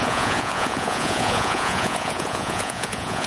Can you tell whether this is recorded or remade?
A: remade